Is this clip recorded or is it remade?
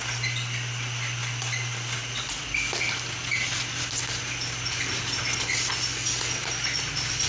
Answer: recorded